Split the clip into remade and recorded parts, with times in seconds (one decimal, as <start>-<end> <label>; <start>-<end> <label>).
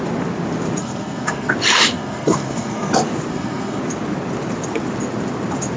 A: 0.0-0.8 recorded; 0.8-1.5 remade; 1.5-1.9 recorded; 1.9-2.9 remade; 2.9-3.3 recorded; 3.3-3.8 remade; 3.8-5.8 recorded